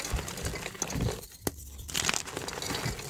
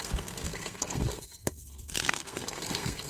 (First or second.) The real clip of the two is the first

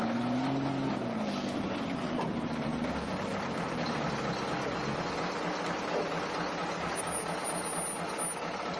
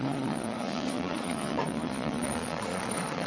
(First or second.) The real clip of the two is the first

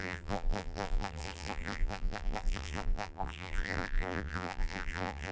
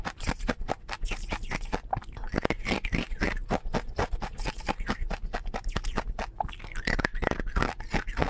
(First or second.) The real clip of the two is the second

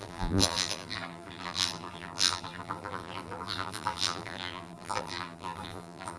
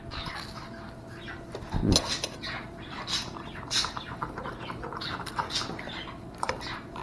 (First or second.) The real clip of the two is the second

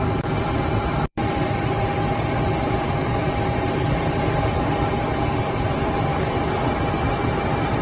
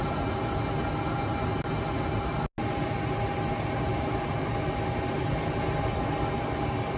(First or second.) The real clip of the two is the second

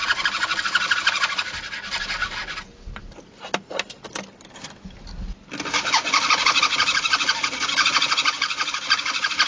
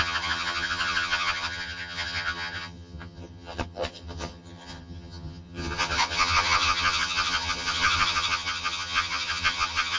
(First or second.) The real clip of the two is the first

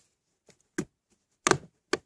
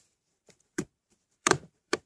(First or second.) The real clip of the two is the first